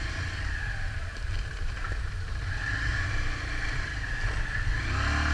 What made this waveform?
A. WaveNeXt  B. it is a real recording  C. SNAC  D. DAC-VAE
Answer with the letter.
B